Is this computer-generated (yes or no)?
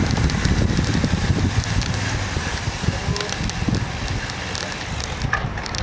no